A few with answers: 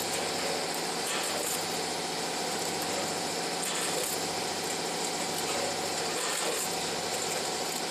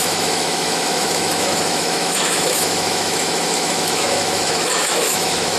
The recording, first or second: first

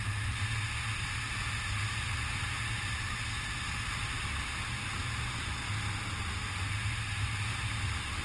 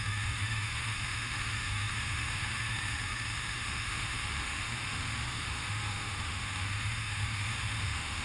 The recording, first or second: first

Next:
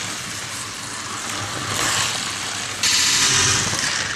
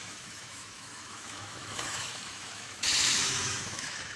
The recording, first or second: first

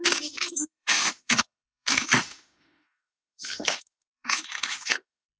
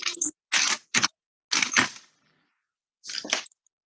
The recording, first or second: second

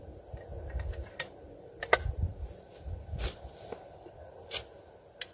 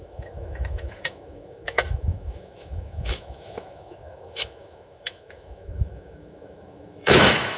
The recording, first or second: first